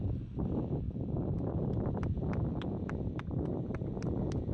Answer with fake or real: real